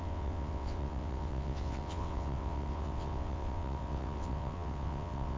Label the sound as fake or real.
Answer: fake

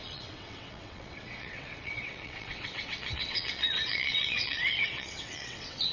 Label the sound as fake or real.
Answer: fake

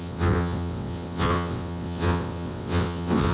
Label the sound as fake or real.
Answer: fake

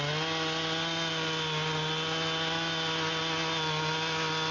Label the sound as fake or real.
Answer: real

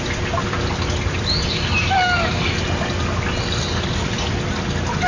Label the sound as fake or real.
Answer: real